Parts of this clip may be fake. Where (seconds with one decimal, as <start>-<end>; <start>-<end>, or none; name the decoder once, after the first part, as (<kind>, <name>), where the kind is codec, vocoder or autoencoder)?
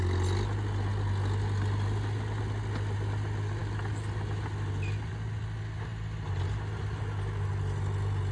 none